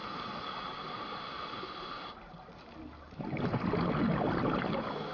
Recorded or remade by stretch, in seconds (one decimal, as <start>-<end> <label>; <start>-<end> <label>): 0.0-5.1 recorded